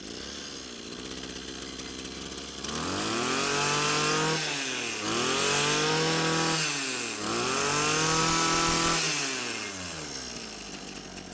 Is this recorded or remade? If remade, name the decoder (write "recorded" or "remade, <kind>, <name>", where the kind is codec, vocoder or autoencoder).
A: recorded